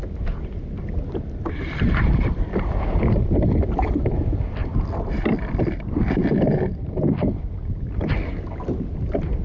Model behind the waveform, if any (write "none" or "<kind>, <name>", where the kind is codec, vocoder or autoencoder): none